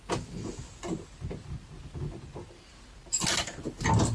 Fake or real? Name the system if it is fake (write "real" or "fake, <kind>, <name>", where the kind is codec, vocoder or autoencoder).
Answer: real